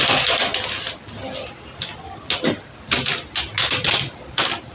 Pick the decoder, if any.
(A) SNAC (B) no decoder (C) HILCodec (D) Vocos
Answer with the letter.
B